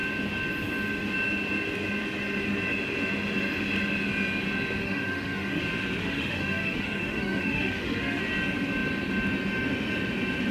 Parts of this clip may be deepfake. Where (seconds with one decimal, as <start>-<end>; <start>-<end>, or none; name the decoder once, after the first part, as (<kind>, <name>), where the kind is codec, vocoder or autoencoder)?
4.8-5.6 (autoencoder, DAC-VAE); 6.0-8.2